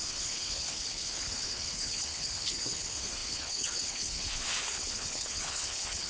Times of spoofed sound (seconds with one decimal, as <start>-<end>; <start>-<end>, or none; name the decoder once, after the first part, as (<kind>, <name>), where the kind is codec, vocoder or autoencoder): 0.0-6.1 (codec, HILCodec)